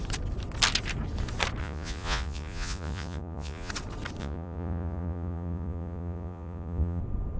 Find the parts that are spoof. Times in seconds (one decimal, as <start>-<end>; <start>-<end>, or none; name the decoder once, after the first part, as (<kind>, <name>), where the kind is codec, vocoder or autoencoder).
1.6-3.7 (vocoder, Vocos); 4.2-7.0